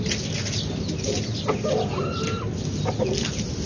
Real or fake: real